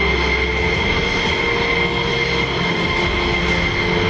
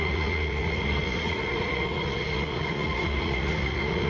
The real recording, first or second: first